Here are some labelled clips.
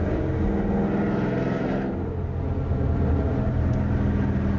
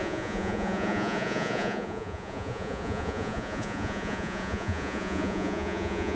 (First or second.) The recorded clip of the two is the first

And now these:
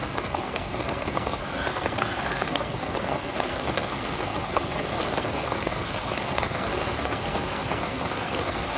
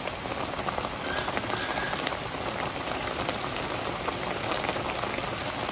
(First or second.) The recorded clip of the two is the second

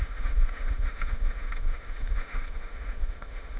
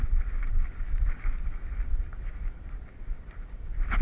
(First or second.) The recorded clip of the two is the second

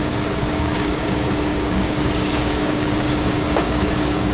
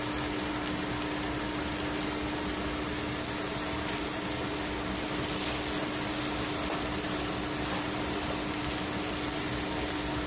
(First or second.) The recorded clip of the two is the second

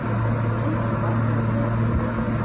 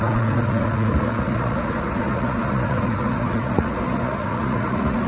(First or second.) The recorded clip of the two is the first